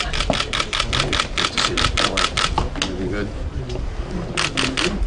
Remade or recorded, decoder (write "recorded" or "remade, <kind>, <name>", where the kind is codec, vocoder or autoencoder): recorded